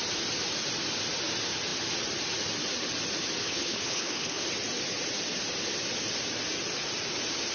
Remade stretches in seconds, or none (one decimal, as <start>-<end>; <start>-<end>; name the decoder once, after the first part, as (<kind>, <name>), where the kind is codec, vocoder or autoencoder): 3.4-4.4 (codec, HILCodec)